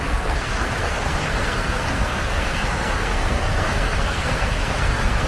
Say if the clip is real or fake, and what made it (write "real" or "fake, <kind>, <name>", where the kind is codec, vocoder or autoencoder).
fake, codec, SNAC